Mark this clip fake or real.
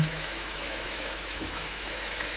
fake